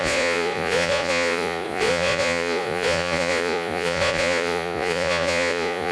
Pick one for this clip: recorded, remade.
remade